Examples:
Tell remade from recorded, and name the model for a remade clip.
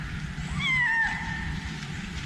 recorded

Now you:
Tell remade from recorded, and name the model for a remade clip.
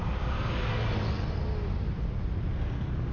recorded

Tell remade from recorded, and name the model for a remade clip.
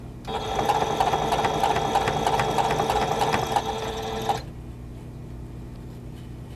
recorded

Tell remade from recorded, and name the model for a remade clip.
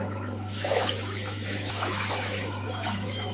remade, autoencoder, DAC-VAE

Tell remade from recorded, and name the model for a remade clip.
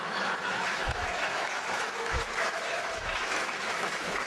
remade, autoencoder, DAC-VAE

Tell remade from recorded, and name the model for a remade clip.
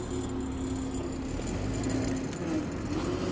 recorded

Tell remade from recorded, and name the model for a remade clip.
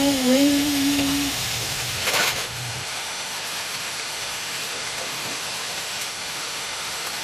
remade, autoencoder, DAC-VAE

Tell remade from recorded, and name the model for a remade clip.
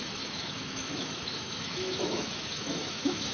remade, autoencoder, DAC-VAE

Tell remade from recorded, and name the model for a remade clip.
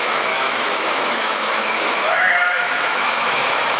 remade, autoencoder, DAC-VAE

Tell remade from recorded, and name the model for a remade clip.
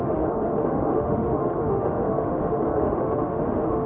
remade, autoencoder, DAC-VAE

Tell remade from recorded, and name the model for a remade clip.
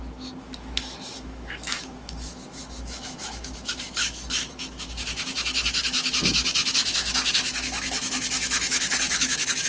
remade, autoencoder, DAC-VAE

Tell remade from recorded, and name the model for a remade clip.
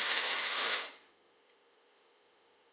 remade, autoencoder, DAC-VAE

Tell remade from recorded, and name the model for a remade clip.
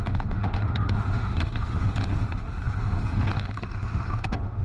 remade, autoencoder, DAC-VAE